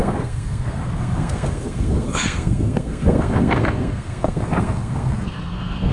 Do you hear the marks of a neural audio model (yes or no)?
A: yes